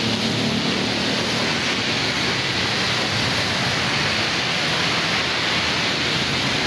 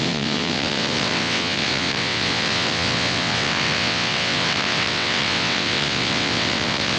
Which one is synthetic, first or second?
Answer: second